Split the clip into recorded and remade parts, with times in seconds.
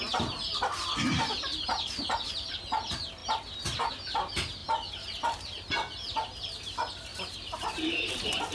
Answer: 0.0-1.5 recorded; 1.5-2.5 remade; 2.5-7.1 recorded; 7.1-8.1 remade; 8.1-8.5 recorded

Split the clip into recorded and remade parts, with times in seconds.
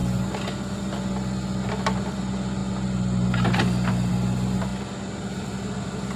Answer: 0.0-6.2 recorded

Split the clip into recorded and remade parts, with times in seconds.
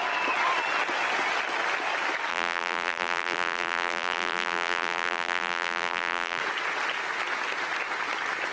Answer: 0.0-2.3 recorded; 2.3-6.4 remade; 6.4-8.5 recorded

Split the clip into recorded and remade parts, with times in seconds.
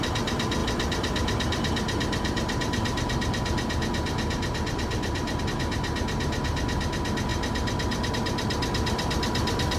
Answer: 0.0-0.6 recorded; 0.6-5.4 remade; 5.4-9.8 recorded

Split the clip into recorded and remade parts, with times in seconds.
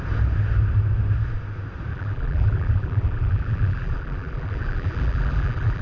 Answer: 0.0-1.9 recorded; 1.9-5.8 remade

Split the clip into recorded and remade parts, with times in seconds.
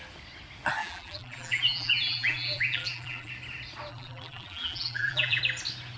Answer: 0.0-0.8 recorded; 0.8-3.3 remade; 3.3-3.9 recorded; 3.9-5.4 remade; 5.4-6.0 recorded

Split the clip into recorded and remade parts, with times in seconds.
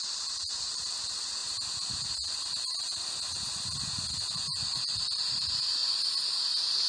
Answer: 0.0-1.4 remade; 1.4-5.3 recorded; 5.3-5.8 remade; 5.8-6.4 recorded; 6.4-6.9 remade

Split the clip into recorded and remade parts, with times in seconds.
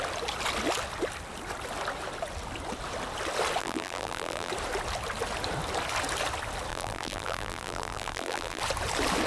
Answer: 0.0-3.6 recorded; 3.6-4.5 remade; 4.5-6.7 recorded; 6.7-8.6 remade; 8.6-9.3 recorded